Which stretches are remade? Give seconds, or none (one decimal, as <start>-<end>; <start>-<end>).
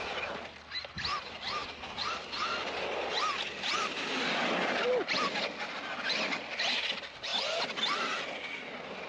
none